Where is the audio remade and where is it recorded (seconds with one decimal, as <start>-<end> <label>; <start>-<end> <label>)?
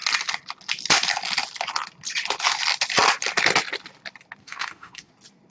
0.0-4.4 recorded; 4.4-5.1 remade; 5.1-5.5 recorded